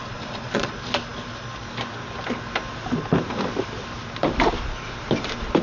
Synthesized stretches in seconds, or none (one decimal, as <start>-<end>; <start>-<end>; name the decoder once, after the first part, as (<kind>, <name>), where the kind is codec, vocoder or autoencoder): 0.0-0.7 (vocoder, Vocos)

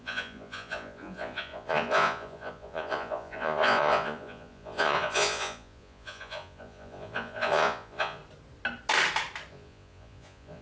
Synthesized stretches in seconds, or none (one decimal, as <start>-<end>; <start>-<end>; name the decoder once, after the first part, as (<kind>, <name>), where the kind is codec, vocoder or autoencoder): 0.0-8.2 (vocoder, Vocos); 9.5-10.6